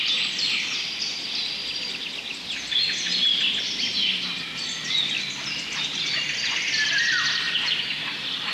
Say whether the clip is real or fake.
real